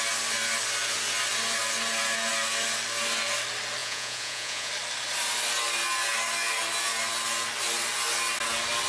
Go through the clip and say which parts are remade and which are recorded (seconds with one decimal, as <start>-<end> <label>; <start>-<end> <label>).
0.0-3.8 recorded; 3.8-4.7 remade; 4.7-8.9 recorded